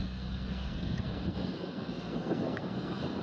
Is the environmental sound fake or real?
fake